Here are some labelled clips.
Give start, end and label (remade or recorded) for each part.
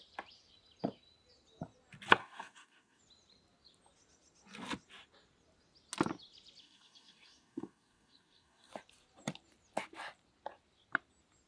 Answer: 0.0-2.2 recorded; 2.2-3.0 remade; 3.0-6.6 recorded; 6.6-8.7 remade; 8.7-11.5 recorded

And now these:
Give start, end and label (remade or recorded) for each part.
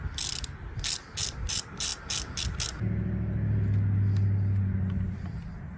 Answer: 0.0-5.8 recorded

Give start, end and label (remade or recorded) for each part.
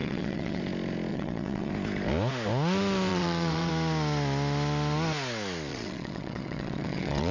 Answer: 0.0-0.6 remade; 0.6-1.1 recorded; 1.1-1.7 remade; 1.7-3.1 recorded; 3.1-3.7 remade; 3.7-5.7 recorded; 5.7-7.3 remade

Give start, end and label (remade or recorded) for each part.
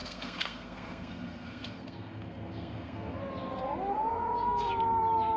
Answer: 0.0-3.2 remade; 3.2-3.9 recorded; 3.9-4.7 remade; 4.7-5.4 recorded